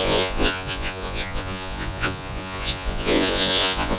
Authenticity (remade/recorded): remade